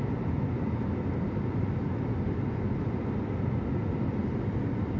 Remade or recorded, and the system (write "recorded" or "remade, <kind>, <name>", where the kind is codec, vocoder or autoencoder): recorded